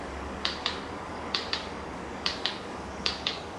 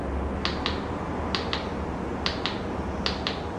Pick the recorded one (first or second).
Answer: second